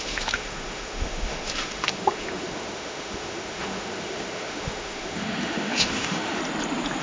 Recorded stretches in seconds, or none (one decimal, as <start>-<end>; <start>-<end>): 6.4-7.0